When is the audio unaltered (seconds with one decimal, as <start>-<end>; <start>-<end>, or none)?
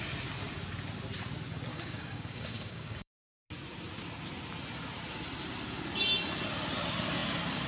0.0-1.7; 3.4-7.7